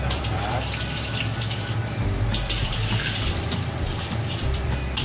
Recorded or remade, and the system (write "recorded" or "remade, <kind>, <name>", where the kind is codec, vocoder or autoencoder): remade, vocoder, BigVGAN v2